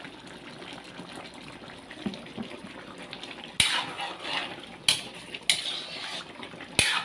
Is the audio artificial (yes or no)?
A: no